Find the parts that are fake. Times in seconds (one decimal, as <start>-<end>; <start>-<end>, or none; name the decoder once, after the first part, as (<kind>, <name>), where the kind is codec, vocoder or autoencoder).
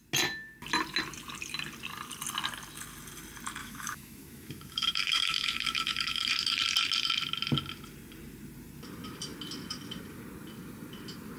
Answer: 3.6-6.3 (autoencoder, DAC-VAE)